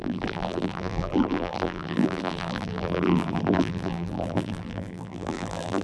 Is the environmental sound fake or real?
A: fake